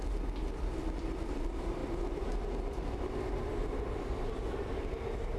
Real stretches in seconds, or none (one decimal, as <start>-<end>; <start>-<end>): 0.0-5.4